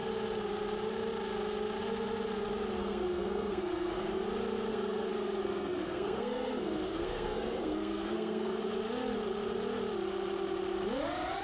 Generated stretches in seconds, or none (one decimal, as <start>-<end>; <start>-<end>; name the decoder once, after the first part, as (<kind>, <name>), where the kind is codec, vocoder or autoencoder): 2.8-4.1 (codec, SNAC); 4.7-8.6